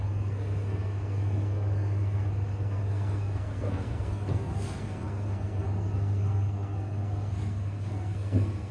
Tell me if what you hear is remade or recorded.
remade